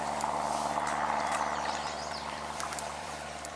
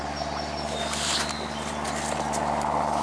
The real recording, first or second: second